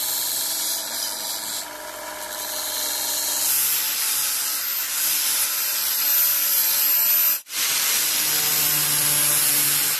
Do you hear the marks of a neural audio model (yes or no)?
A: no